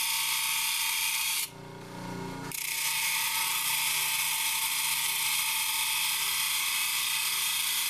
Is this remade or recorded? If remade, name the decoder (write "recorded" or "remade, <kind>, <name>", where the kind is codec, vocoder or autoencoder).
recorded